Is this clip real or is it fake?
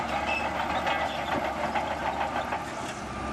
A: real